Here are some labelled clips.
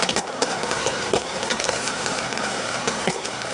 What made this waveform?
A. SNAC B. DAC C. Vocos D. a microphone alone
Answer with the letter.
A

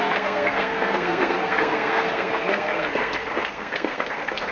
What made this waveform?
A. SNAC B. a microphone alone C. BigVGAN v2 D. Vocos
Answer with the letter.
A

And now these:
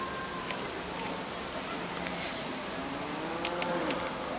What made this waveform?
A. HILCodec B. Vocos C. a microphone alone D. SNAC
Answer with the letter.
C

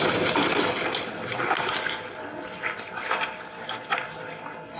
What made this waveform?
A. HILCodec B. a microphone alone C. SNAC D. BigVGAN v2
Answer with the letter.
B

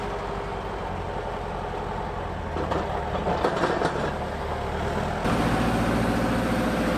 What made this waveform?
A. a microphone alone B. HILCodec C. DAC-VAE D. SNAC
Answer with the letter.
A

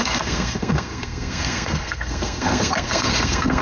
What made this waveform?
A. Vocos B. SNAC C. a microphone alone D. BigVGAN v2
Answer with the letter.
B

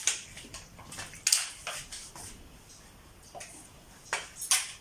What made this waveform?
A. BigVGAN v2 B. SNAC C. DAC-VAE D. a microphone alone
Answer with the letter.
D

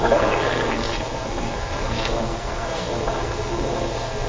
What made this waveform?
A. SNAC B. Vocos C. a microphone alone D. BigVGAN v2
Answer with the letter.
A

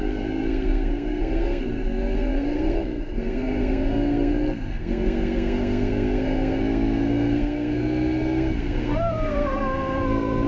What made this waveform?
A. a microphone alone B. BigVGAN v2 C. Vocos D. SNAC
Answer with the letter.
D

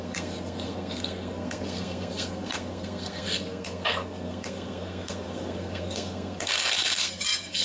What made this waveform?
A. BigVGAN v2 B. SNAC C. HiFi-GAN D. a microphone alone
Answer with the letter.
B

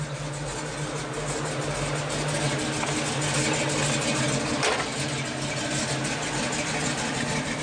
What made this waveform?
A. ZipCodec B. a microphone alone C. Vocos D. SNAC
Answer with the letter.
B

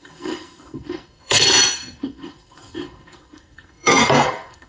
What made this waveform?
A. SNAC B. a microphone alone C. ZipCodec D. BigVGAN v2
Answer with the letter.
A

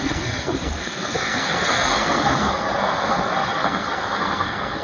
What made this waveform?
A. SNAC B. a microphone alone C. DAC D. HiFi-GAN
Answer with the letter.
A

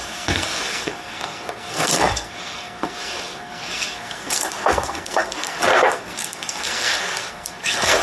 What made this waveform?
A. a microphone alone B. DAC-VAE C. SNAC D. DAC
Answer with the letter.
C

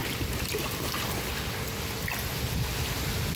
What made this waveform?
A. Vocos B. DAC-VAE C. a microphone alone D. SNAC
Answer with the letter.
C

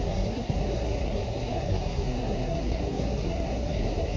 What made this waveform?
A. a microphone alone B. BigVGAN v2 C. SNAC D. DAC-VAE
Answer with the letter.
C